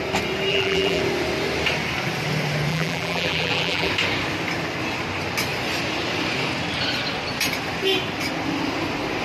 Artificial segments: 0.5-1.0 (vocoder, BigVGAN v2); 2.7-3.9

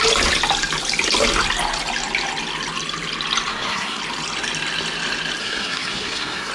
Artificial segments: 3.5-4.0 (codec, SNAC); 5.4-6.5

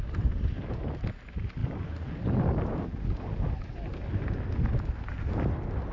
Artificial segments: none

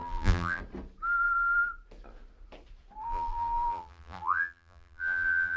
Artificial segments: 0.0-0.6 (vocoder, BigVGAN v2); 3.0-5.6

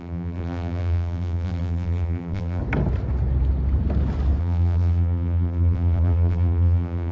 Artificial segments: 0.0-2.6 (vocoder, BigVGAN v2); 4.4-7.1

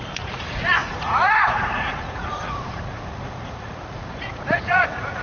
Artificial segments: 0.0-5.2 (vocoder, Vocos)